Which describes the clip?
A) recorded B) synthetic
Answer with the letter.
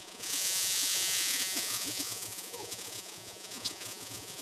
B